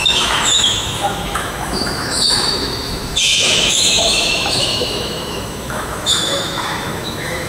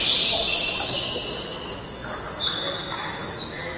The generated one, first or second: first